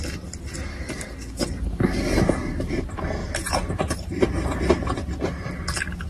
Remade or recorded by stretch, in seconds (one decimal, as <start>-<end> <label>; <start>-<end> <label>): 0.0-0.7 recorded; 0.7-2.8 remade; 2.8-6.1 recorded